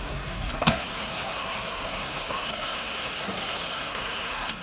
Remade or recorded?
remade